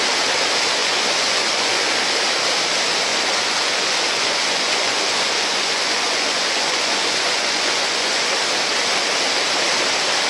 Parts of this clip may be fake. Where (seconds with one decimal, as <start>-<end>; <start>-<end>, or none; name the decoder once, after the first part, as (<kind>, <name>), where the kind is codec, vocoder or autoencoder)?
0.8-2.0 (vocoder, Vocos); 3.1-8.3